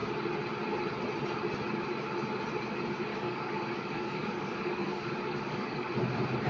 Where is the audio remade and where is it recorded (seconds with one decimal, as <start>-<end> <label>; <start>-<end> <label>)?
0.0-3.1 recorded; 3.1-5.9 remade; 5.9-6.5 recorded